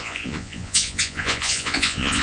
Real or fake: fake